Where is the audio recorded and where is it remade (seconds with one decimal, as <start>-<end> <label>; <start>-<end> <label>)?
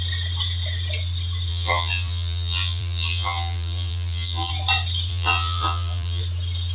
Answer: 0.0-1.5 recorded; 1.5-4.5 remade; 4.5-5.1 recorded; 5.1-6.2 remade; 6.2-6.7 recorded